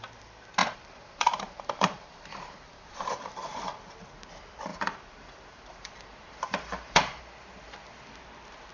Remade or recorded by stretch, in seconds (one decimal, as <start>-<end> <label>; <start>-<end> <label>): 0.0-0.6 recorded; 0.6-3.8 remade; 3.8-4.7 recorded; 4.7-7.2 remade; 7.2-8.7 recorded